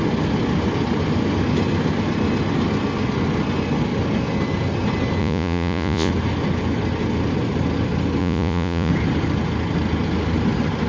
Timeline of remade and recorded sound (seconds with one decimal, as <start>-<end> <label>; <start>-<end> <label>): 0.0-5.2 recorded; 5.2-6.1 remade; 6.1-8.2 recorded; 8.2-8.9 remade; 8.9-10.9 recorded